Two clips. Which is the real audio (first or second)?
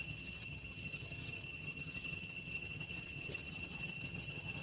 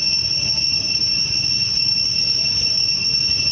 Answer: second